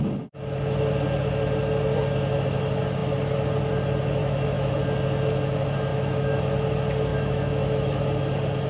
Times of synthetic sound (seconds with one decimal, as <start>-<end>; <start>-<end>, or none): 4.2-4.7; 5.9-6.4; 7.1-8.0